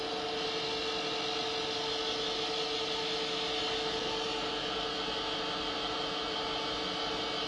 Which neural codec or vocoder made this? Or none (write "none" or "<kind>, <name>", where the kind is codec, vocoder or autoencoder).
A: none